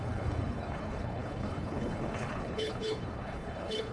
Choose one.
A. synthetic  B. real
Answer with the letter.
A